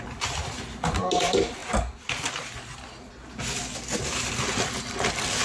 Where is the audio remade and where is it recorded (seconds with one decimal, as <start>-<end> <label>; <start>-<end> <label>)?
0.0-5.4 recorded

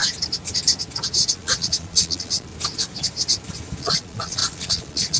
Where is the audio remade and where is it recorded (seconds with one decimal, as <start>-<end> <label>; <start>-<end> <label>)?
0.0-1.3 recorded; 1.3-2.5 remade; 2.5-3.8 recorded; 3.8-5.2 remade

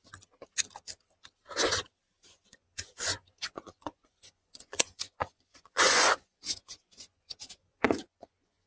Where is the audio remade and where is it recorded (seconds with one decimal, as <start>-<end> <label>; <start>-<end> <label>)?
0.0-2.1 recorded; 2.1-8.7 remade

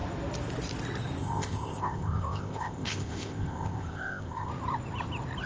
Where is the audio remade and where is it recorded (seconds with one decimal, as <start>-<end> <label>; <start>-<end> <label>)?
0.0-1.2 recorded; 1.2-4.5 remade; 4.5-5.5 recorded

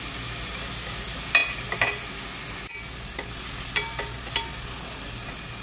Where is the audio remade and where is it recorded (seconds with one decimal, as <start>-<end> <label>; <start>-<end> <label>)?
0.0-5.6 recorded

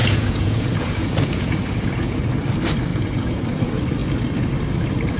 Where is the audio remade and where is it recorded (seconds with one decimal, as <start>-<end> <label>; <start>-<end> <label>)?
0.0-2.2 remade; 2.2-2.9 recorded; 2.9-3.6 remade; 3.6-5.2 recorded

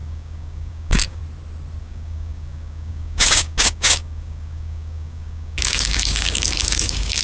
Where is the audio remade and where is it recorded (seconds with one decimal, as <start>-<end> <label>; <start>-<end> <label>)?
0.0-1.2 remade; 1.2-1.8 recorded; 1.8-7.2 remade